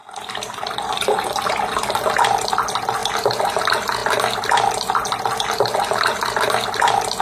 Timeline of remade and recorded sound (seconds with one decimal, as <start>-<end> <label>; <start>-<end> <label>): 0.0-7.2 recorded